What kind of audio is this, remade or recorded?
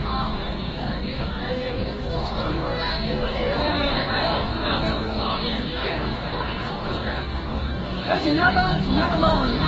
remade